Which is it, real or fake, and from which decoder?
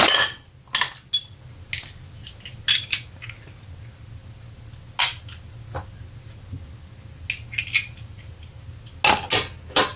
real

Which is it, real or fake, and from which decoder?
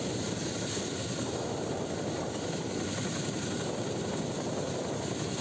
real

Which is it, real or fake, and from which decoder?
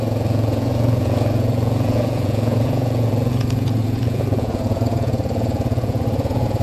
fake, vocoder, Vocos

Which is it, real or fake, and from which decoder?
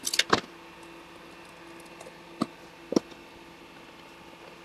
real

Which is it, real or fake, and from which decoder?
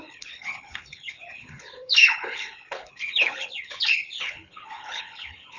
fake, codec, HILCodec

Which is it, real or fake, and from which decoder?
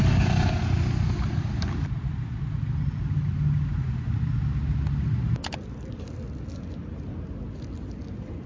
real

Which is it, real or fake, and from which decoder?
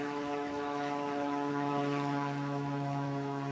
fake, autoencoder, DAC-VAE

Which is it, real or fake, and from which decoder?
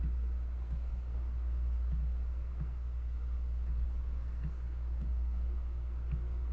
fake, codec, SNAC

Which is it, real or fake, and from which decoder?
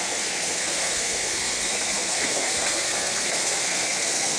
fake, codec, SNAC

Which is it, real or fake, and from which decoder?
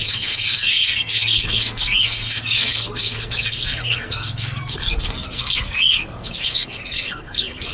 fake, codec, SNAC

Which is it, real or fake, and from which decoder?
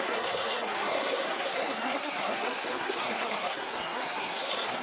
fake, codec, SNAC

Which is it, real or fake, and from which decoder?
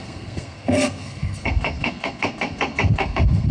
fake, codec, SNAC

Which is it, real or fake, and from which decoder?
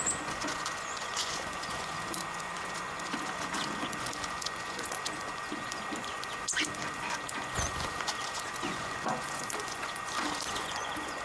fake, vocoder, Vocos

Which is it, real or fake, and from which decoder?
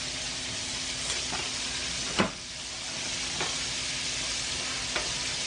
real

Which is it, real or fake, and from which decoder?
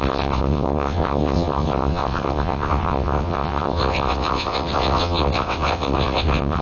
fake, vocoder, WaveNeXt